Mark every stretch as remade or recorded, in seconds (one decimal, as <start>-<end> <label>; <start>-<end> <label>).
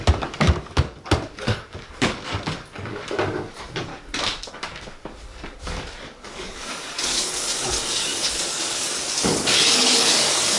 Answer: 0.0-3.9 remade; 3.9-4.5 recorded; 4.5-10.6 remade